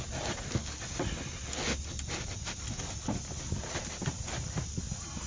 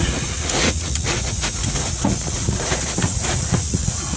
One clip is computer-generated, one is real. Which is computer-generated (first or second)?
second